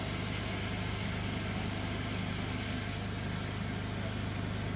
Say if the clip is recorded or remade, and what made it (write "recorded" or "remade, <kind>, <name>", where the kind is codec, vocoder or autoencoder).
recorded